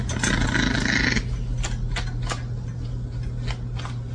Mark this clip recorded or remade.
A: recorded